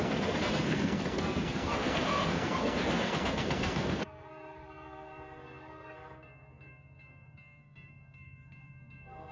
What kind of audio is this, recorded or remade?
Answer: remade